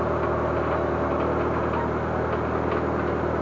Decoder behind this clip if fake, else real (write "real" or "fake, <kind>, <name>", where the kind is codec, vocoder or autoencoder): real